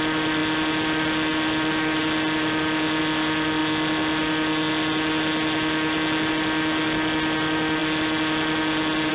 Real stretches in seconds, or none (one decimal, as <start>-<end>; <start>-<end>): 0.0-9.1